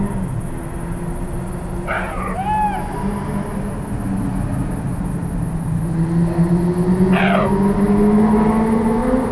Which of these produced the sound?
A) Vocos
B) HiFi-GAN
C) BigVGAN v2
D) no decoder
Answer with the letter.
D